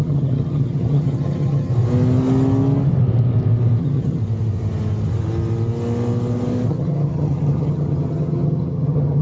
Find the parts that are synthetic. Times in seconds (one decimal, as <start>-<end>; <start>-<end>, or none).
0.0-1.7; 3.8-4.2; 6.7-9.2